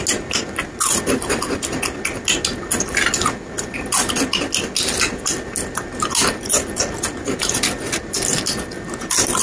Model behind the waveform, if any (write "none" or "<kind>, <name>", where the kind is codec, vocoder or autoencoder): none